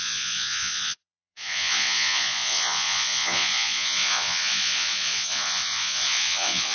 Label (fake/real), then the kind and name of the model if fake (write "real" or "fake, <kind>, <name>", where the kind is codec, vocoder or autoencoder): fake, vocoder, Vocos